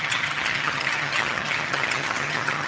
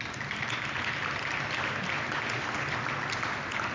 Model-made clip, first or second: first